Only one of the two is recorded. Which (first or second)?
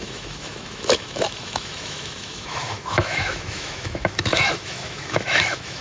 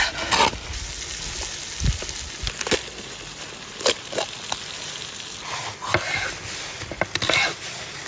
second